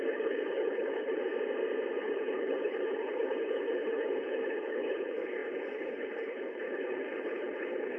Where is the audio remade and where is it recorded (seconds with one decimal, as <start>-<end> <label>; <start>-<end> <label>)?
0.0-1.2 remade; 1.2-2.0 recorded; 2.0-8.0 remade